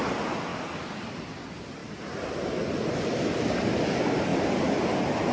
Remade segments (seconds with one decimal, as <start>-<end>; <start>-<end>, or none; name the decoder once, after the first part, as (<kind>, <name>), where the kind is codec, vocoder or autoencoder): 4.3-4.8 (vocoder, BigVGAN v2)